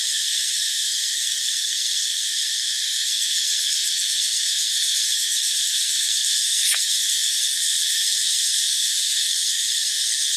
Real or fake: fake